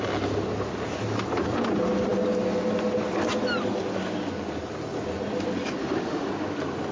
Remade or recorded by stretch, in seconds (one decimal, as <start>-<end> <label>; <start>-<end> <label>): 0.0-5.8 recorded; 5.8-6.3 remade; 6.3-6.9 recorded